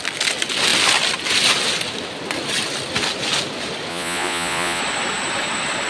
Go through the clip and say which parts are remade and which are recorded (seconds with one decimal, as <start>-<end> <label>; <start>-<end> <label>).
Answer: 0.0-3.9 recorded; 3.9-4.8 remade; 4.8-5.9 recorded